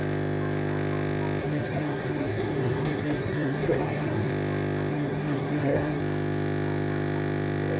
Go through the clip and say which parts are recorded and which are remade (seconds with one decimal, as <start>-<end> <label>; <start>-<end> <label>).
0.0-1.4 recorded; 1.4-4.3 remade; 4.3-4.9 recorded; 4.9-6.0 remade; 6.0-7.8 recorded